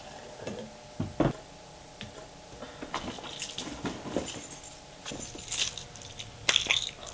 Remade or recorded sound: recorded